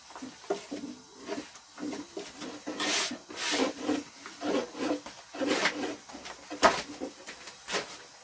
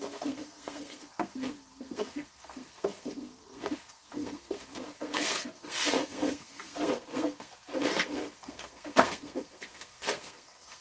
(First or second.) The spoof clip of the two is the second